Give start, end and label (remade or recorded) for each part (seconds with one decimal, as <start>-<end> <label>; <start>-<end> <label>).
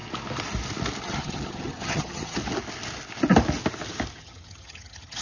0.0-1.0 recorded; 1.0-2.4 remade; 2.4-4.2 recorded; 4.2-5.2 remade